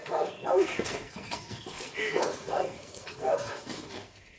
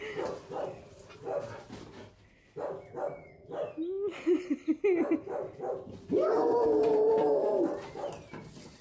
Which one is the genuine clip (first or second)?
second